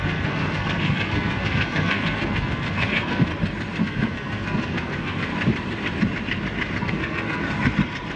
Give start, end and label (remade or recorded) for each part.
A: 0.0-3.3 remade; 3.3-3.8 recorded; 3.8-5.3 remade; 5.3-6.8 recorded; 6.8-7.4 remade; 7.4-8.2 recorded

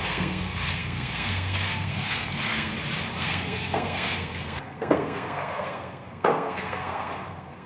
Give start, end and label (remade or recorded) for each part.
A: 0.0-2.7 remade; 2.7-3.2 recorded; 3.2-7.7 remade

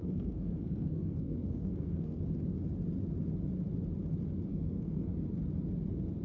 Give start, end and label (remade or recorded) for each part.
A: 0.0-2.2 remade; 2.2-4.5 recorded; 4.5-5.1 remade; 5.1-6.2 recorded